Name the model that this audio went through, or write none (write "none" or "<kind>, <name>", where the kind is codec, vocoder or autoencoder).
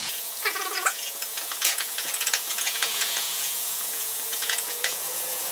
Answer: vocoder, Vocos